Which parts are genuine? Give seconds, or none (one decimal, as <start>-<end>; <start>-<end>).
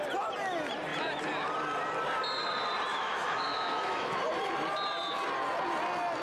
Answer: 0.0-2.9; 4.2-6.2